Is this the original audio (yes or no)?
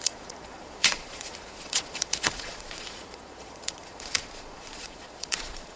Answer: no